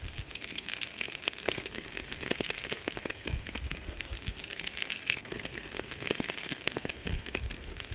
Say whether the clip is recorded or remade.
remade